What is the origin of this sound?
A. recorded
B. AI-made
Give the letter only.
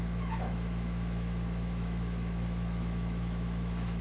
B